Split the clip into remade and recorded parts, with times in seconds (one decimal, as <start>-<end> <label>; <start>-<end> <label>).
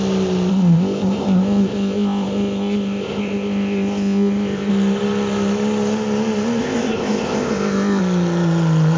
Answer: 0.0-0.5 recorded; 0.5-4.7 remade; 4.7-6.6 recorded; 6.6-8.0 remade; 8.0-9.0 recorded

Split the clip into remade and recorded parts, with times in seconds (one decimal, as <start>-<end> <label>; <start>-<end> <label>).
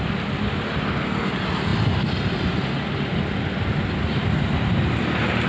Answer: 0.0-5.5 recorded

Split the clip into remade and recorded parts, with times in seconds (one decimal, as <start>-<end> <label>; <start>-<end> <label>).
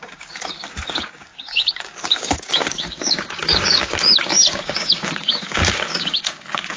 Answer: 0.0-6.8 remade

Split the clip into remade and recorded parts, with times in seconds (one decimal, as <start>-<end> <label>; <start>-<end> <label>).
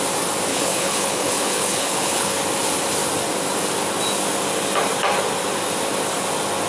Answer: 0.0-0.5 recorded; 0.5-2.4 remade; 2.4-6.7 recorded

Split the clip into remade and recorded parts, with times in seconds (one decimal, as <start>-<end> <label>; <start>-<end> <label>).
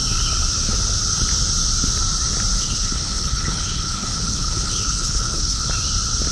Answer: 0.0-2.5 recorded; 2.5-5.6 remade; 5.6-6.3 recorded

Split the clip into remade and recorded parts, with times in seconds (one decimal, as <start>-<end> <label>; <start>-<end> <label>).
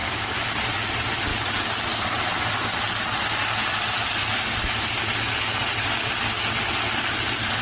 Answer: 0.0-0.7 remade; 0.7-7.6 recorded